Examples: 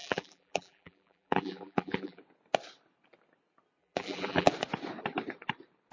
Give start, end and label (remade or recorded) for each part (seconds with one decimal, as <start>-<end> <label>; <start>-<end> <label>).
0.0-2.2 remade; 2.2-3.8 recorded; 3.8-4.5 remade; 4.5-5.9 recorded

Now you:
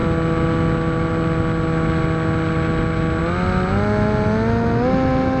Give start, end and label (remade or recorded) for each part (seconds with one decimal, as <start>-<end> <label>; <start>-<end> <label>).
0.0-5.4 recorded

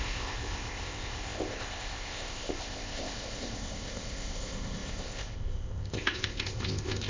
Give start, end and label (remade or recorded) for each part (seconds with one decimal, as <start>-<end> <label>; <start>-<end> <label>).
0.0-7.1 remade